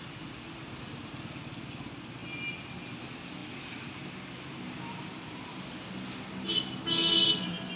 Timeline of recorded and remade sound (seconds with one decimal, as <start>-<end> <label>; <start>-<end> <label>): 0.0-7.8 recorded